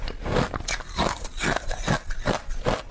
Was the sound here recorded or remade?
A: recorded